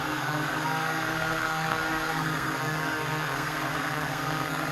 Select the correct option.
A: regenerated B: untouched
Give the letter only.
A